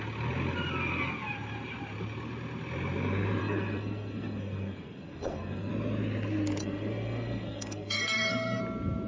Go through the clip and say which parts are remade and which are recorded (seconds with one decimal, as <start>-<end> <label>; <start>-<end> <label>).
0.0-3.4 recorded; 3.4-5.7 remade; 5.7-6.6 recorded; 6.6-8.6 remade; 8.6-9.1 recorded